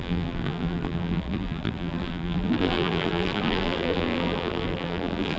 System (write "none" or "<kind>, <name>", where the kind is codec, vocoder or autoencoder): vocoder, BigVGAN v2